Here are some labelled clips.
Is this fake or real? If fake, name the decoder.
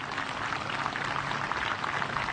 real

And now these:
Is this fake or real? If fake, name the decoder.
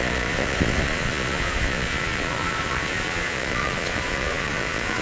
fake, vocoder, Vocos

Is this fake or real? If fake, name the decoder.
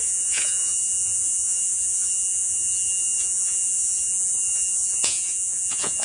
fake, vocoder, Vocos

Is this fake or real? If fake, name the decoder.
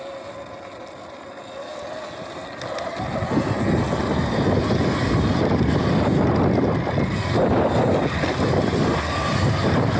real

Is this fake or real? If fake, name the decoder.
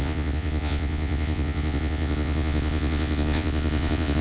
fake, vocoder, Vocos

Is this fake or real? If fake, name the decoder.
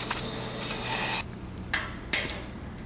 real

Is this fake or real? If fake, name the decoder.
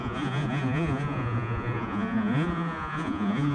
fake, vocoder, Vocos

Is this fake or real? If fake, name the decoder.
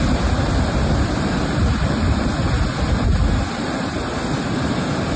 real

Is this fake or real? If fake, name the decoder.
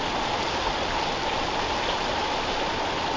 real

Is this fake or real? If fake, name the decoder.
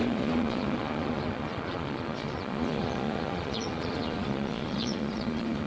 fake, vocoder, Vocos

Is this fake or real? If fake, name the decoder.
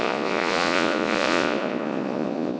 fake, vocoder, Vocos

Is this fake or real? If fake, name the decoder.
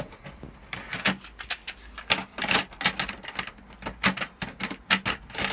real